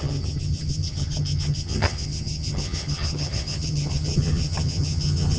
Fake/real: fake